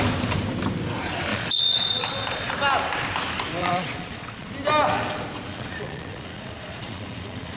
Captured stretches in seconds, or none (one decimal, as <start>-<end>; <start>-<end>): 0.0-1.3; 2.5-3.6; 4.5-5.5